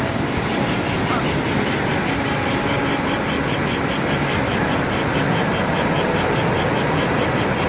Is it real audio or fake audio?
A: fake